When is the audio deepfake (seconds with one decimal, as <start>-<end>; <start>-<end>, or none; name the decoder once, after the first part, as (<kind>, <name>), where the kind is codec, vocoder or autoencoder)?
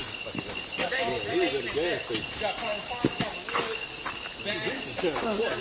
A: 0.0-2.1 (vocoder, BigVGAN v2)